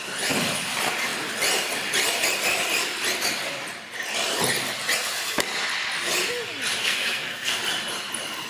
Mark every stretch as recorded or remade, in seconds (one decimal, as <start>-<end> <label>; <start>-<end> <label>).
0.0-6.8 recorded; 6.8-7.6 remade; 7.6-8.5 recorded